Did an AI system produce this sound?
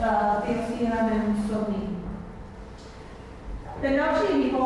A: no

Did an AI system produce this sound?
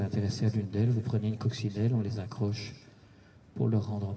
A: no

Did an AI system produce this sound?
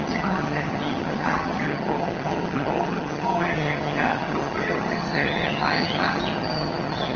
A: yes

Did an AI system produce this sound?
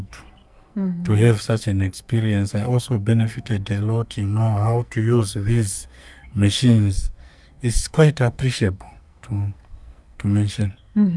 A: yes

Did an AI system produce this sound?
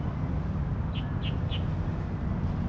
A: no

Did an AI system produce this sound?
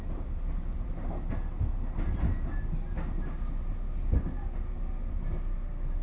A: no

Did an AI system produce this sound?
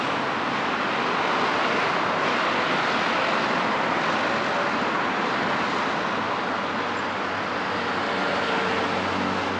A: no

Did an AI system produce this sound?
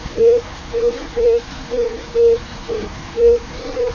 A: yes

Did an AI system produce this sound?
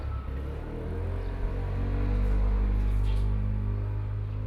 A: no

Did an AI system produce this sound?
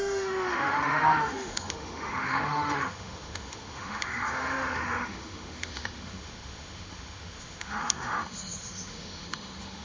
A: yes